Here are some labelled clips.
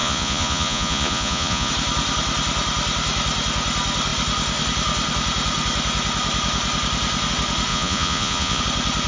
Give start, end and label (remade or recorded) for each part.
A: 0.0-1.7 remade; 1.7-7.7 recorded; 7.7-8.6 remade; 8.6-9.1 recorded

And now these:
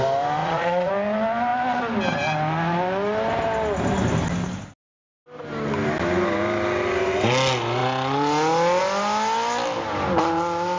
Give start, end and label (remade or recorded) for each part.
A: 0.0-0.4 recorded; 0.4-0.9 remade; 0.9-10.8 recorded

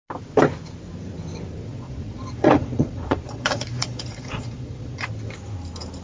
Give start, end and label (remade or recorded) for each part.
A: 0.0-1.7 recorded; 1.7-5.1 remade; 5.1-6.0 recorded

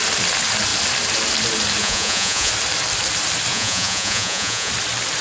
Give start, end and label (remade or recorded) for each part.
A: 0.0-1.8 recorded; 1.8-2.5 remade; 2.5-3.5 recorded; 3.5-4.7 remade; 4.7-5.2 recorded

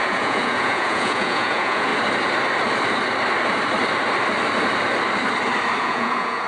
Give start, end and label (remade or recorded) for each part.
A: 0.0-1.9 remade; 1.9-5.8 recorded; 5.8-6.5 remade

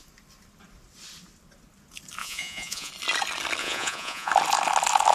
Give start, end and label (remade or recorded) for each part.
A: 0.0-2.2 recorded; 2.2-2.9 remade; 2.9-3.6 recorded; 3.6-4.3 remade; 4.3-5.1 recorded

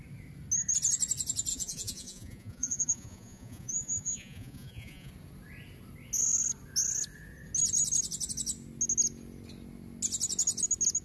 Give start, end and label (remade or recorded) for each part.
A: 0.0-1.5 recorded; 1.5-5.1 remade; 5.1-11.0 recorded